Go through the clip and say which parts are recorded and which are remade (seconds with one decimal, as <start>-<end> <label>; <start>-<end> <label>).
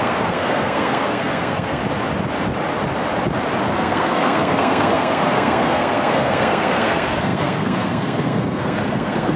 0.0-1.8 remade; 1.8-3.7 recorded; 3.7-9.4 remade